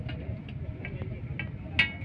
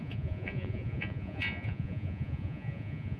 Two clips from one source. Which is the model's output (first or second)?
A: second